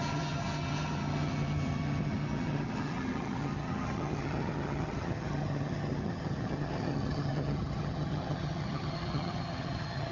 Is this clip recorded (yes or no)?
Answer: no